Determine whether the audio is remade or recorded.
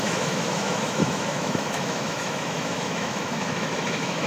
remade